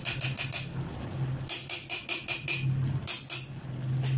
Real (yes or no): yes